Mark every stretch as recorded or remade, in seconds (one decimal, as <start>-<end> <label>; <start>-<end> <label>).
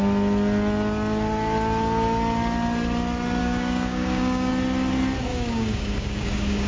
0.0-3.4 recorded; 3.4-4.5 remade; 4.5-5.3 recorded; 5.3-6.7 remade